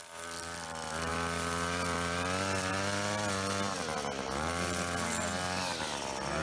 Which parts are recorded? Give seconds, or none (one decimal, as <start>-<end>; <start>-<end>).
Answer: 0.0-6.4